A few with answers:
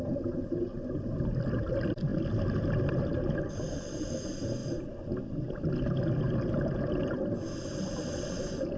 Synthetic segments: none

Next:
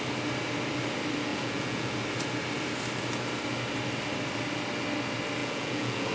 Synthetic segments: 1.3-1.9 (vocoder, Vocos); 5.4-6.1

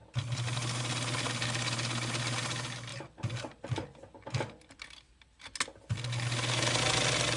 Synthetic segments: none

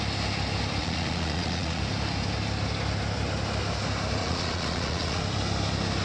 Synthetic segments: 0.8-1.8 (vocoder, Vocos); 4.2-5.2

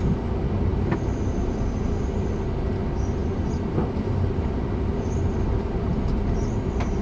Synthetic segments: none

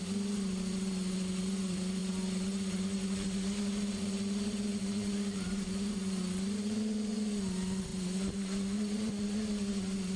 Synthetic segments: 0.0-10.2 (vocoder, Vocos)

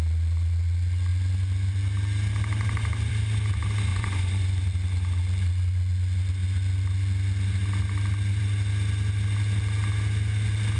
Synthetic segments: 3.9-4.6 (vocoder, Vocos)